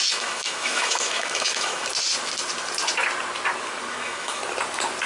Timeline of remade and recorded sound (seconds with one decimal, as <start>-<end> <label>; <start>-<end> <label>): 0.0-1.9 remade; 1.9-3.9 recorded; 3.9-4.4 remade; 4.4-5.1 recorded